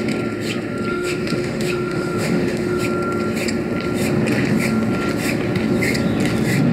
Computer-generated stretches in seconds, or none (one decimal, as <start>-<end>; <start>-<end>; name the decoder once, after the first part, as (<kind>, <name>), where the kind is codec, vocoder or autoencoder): 0.9-2.8 (autoencoder, DAC-VAE)